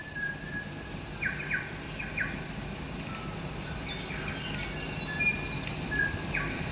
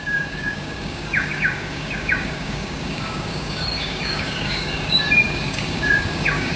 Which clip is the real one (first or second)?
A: first